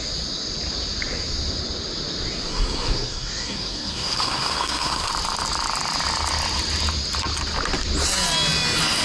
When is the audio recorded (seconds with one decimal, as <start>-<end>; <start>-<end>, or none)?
0.0-2.5; 5.1-9.0